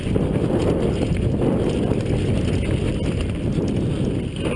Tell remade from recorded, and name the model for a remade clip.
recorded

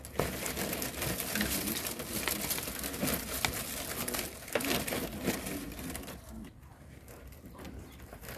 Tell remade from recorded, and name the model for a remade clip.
recorded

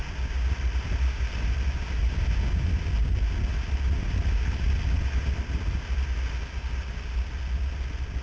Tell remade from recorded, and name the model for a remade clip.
recorded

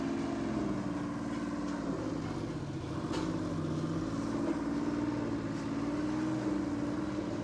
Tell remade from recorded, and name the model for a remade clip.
recorded